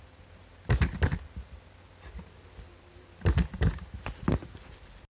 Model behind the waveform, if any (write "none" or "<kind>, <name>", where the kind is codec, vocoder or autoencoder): none